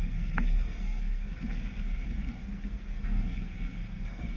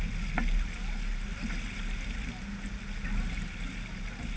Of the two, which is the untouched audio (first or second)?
second